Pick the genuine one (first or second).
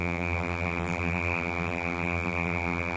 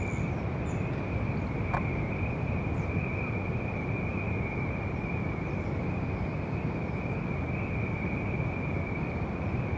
second